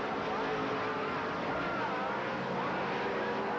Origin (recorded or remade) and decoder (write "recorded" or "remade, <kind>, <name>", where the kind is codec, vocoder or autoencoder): recorded